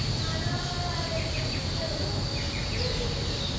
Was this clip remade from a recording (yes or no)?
no